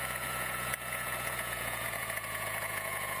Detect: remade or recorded remade